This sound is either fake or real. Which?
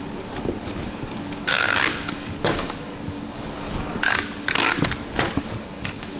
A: fake